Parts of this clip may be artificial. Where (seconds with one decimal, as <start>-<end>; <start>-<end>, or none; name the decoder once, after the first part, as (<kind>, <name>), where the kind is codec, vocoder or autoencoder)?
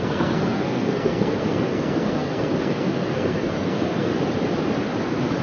0.0-4.1 (codec, SNAC)